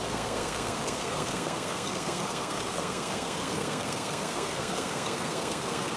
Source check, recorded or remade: remade